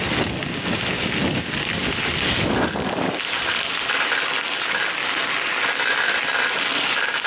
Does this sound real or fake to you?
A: real